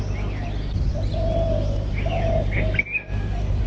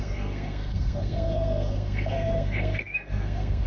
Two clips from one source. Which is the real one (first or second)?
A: first